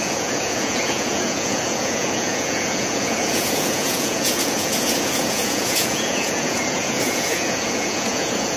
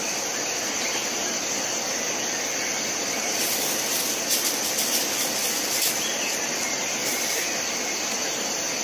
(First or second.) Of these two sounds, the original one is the second